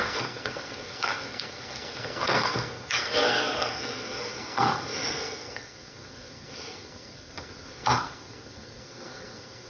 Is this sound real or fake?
fake